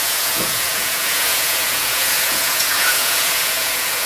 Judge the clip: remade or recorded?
remade